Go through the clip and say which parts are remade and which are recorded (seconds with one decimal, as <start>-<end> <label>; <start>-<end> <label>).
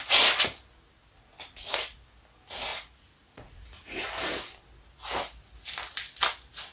0.0-2.7 recorded; 2.7-4.0 remade; 4.0-6.7 recorded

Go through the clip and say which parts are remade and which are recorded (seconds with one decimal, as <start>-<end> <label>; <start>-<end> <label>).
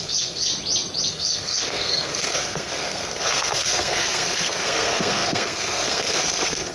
0.0-0.5 remade; 0.5-1.1 recorded; 1.1-6.7 remade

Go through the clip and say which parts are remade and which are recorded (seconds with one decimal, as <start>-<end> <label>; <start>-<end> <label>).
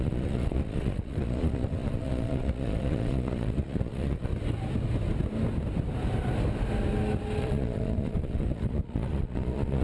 0.0-4.3 remade; 4.3-7.4 recorded; 7.4-9.8 remade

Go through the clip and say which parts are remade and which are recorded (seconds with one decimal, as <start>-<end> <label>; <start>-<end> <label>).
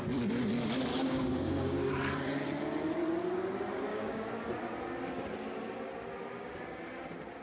0.0-0.9 recorded; 0.9-1.9 remade; 1.9-3.9 recorded; 3.9-4.4 remade; 4.4-6.2 recorded; 6.2-6.8 remade; 6.8-7.4 recorded